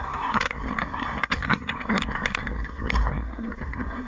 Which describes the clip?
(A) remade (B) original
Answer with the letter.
A